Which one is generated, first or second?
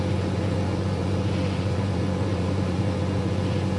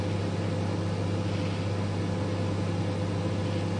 first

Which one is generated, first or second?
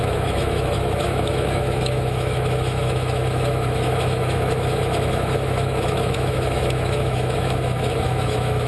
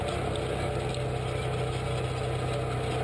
first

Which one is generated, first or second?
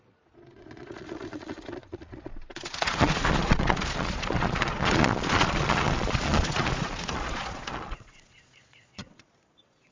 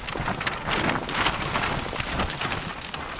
first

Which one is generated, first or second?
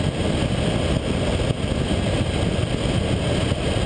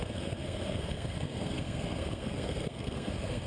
second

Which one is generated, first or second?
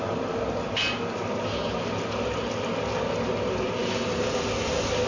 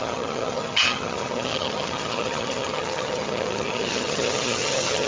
second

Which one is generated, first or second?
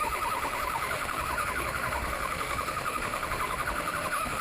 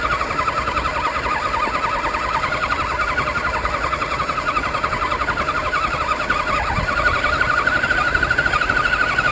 first